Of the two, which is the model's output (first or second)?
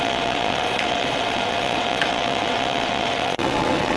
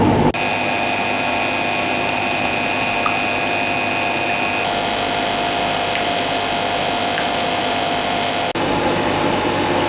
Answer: first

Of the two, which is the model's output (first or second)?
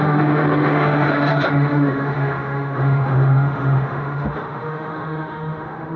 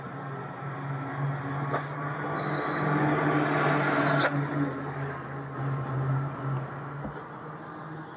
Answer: first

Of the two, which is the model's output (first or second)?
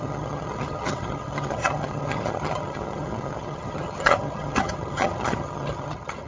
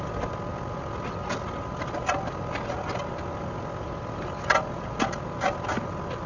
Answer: first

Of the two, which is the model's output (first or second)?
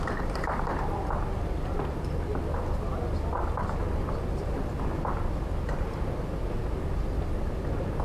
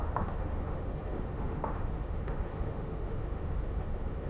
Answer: second